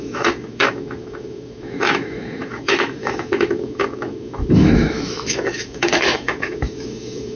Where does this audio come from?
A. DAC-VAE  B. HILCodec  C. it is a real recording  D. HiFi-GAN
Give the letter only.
A